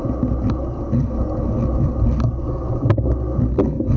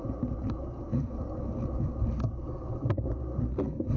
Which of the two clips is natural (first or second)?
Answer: first